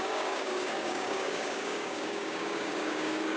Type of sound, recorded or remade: remade